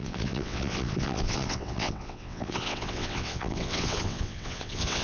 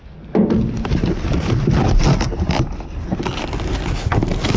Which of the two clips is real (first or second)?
second